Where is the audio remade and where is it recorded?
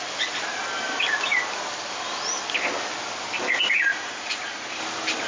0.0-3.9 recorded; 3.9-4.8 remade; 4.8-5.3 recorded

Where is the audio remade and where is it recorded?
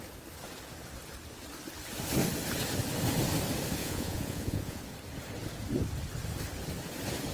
0.0-3.8 recorded; 3.8-4.8 remade; 4.8-7.3 recorded